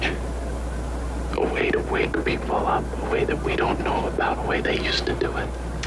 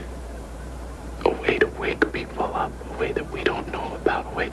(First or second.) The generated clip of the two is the second